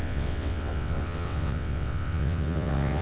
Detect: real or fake fake